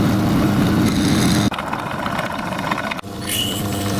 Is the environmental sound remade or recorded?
recorded